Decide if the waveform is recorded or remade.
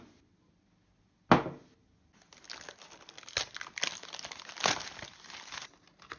recorded